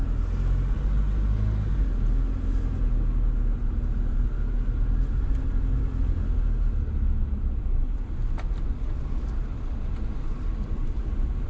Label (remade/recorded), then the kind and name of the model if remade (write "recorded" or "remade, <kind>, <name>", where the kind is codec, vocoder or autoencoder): recorded